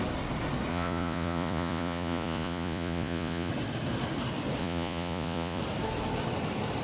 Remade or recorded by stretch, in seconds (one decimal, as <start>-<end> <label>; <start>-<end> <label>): 0.0-0.7 recorded; 0.7-3.5 remade; 3.5-4.6 recorded; 4.6-5.6 remade; 5.6-6.8 recorded